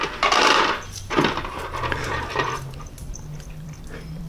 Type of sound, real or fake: fake